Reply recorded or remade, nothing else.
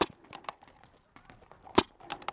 recorded